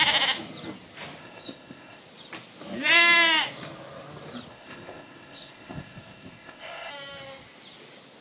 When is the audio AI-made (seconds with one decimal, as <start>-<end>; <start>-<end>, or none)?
1.2-2.0; 4.5-6.9